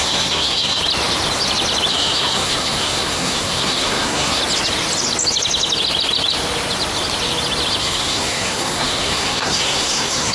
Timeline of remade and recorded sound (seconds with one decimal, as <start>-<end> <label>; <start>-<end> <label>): 0.0-0.8 remade; 0.8-1.9 recorded; 1.9-4.4 remade; 4.4-7.8 recorded; 7.8-10.3 remade